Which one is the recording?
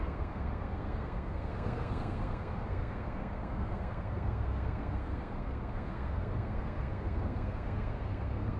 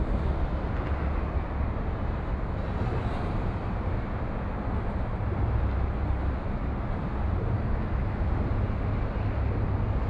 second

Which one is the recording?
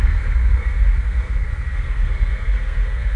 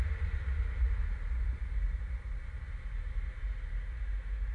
second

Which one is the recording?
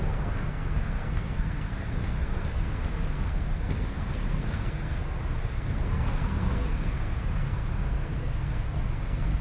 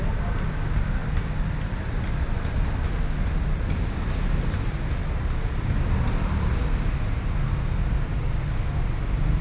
second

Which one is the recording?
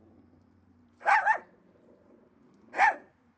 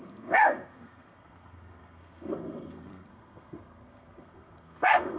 first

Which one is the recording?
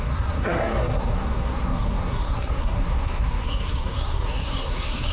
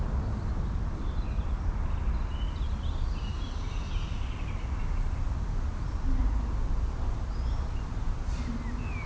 second